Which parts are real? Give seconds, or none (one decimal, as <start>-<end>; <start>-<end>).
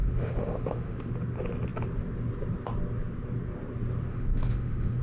1.1-4.1